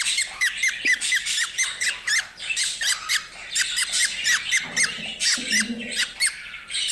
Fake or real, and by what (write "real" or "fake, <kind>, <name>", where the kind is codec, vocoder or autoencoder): real